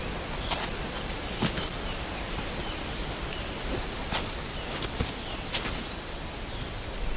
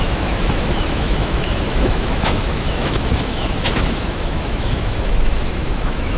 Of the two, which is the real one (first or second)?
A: first